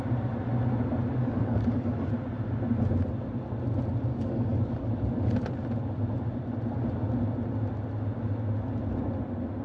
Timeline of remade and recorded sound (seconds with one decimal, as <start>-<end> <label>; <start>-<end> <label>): 0.0-1.2 recorded; 1.2-2.1 remade; 2.1-4.1 recorded; 4.1-4.9 remade; 4.9-9.6 recorded